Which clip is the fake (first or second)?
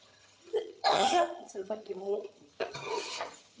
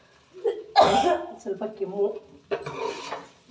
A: first